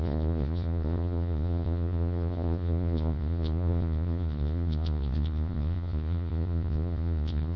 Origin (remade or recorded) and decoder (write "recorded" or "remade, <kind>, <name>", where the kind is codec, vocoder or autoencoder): remade, vocoder, Vocos